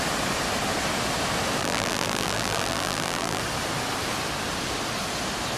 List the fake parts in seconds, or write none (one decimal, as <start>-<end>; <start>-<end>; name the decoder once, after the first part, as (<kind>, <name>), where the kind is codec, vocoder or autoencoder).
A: 1.6-3.4 (vocoder, BigVGAN v2)